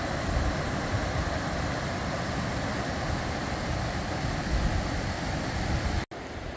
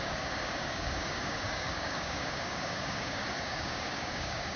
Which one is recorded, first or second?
first